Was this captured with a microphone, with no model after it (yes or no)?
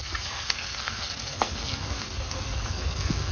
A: no